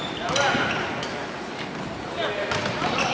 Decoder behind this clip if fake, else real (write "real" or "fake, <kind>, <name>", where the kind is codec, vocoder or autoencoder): real